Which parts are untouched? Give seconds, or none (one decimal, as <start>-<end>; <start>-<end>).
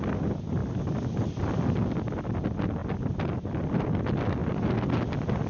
0.0-2.8; 4.0-5.5